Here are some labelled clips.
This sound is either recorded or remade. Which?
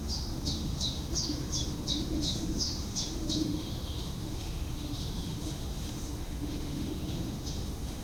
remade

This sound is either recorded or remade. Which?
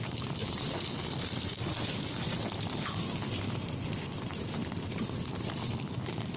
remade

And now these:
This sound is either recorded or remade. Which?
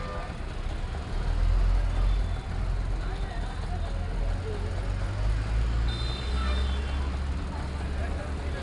recorded